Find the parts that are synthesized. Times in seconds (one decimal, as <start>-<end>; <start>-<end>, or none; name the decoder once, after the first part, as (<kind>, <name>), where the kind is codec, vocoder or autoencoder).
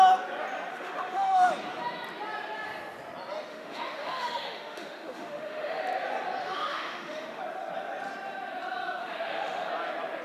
0.7-1.5 (autoencoder, DAC-VAE); 3.5-5.8; 6.4-7.4; 9.0-9.7